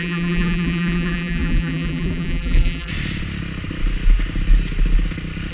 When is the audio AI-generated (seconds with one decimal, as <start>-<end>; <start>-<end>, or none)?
0.0-2.9